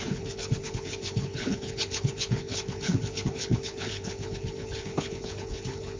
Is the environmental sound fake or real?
fake